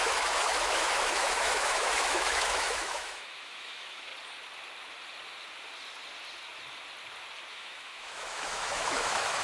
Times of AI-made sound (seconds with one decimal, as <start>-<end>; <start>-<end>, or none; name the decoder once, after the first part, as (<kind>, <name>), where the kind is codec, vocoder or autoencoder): 0.0-4.1 (autoencoder, DAC-VAE); 7.5-9.4